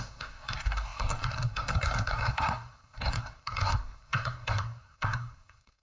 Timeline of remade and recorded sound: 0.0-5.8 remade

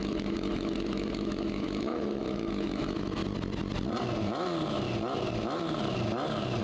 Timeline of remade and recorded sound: 0.0-3.2 remade; 3.2-6.6 recorded

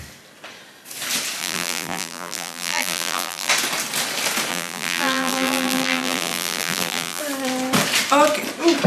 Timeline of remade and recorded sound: 0.0-1.4 recorded; 1.4-3.5 remade; 3.5-4.5 recorded; 4.5-7.2 remade; 7.2-8.9 recorded